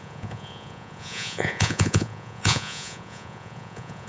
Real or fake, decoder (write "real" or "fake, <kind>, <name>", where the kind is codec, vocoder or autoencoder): fake, vocoder, Vocos